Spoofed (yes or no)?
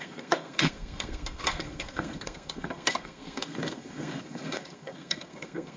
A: yes